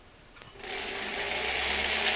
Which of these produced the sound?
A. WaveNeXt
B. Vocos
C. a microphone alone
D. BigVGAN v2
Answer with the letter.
C